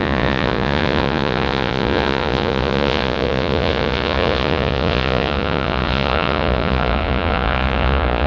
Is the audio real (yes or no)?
no